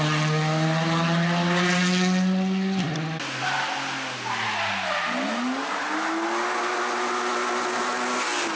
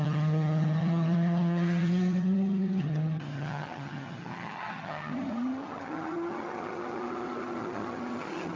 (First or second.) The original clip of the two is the first